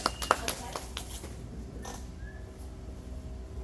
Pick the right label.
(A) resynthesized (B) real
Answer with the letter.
B